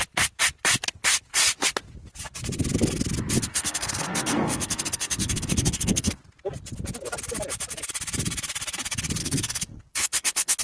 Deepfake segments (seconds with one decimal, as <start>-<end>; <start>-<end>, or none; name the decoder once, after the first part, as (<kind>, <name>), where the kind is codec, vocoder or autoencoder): 3.5-6.2 (codec, SNAC); 9.2-10.6